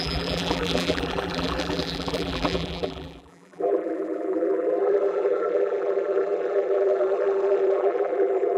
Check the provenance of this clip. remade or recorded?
remade